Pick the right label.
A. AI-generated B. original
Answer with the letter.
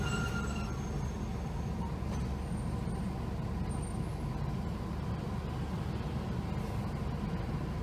B